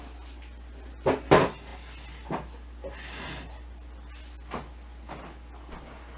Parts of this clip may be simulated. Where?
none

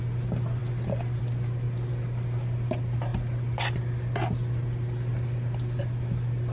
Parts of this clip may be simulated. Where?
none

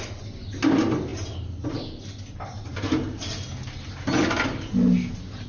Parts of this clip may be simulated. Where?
none